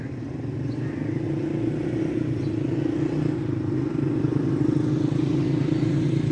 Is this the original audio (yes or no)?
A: yes